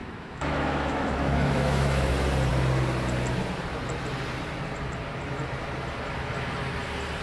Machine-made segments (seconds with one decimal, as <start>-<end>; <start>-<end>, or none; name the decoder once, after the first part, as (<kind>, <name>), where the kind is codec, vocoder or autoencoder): 0.0-2.1 (autoencoder, DAC-VAE)